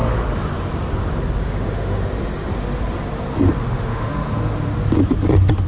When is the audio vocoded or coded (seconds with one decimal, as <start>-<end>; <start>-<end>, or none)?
1.4-2.0; 3.6-4.1